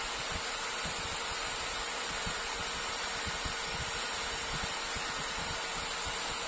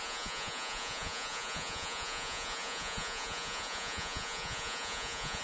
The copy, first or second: second